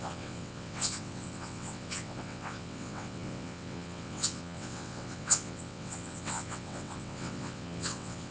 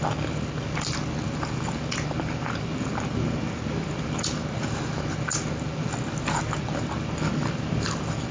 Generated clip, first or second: first